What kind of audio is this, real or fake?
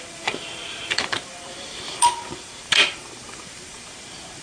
fake